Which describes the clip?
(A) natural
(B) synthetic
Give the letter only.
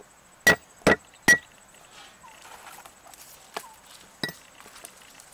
A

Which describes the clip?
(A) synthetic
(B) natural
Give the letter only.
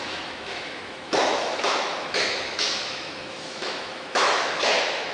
A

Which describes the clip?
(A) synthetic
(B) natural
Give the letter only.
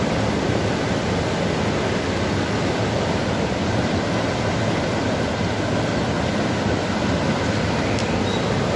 B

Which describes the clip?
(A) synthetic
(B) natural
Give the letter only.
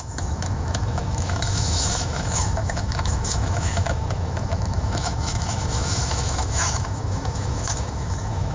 A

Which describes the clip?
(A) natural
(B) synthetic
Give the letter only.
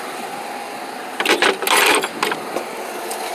A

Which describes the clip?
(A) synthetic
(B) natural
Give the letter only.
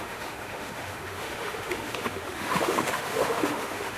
A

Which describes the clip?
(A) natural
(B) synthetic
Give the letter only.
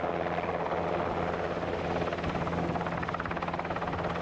A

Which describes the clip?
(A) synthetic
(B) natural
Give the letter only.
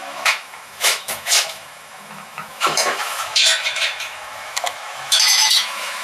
A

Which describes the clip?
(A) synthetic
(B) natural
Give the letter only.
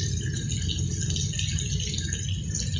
B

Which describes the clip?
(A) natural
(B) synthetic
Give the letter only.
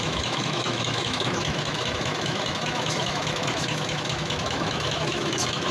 B